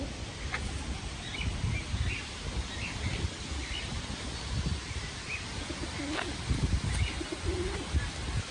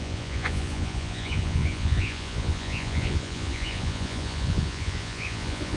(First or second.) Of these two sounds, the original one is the first